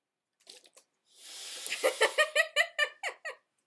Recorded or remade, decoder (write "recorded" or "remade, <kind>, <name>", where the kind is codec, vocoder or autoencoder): recorded